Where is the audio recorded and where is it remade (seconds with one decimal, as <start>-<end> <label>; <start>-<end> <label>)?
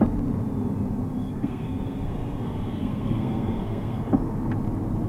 0.0-1.2 recorded; 1.2-4.0 remade; 4.0-5.1 recorded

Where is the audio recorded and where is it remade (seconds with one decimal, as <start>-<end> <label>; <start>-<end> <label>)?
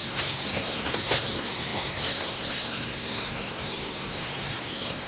0.0-5.1 remade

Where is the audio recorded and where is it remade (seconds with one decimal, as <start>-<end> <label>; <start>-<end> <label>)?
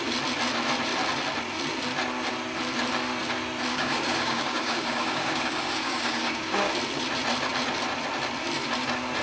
0.0-3.7 recorded; 3.7-6.7 remade; 6.7-9.2 recorded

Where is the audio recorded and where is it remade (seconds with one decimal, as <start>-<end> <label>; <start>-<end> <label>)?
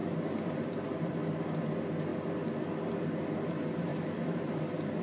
0.0-1.1 remade; 1.1-3.9 recorded; 3.9-5.0 remade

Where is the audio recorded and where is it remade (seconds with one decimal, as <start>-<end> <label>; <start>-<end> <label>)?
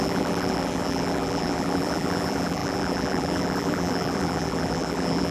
0.0-5.3 remade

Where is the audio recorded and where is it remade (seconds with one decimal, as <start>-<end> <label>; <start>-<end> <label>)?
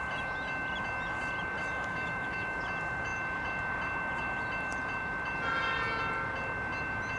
0.0-1.6 recorded; 1.6-2.6 remade; 2.6-7.2 recorded